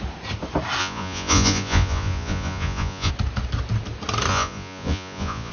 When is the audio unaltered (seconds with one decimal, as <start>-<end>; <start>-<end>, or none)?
0.0-0.8; 3.1-4.3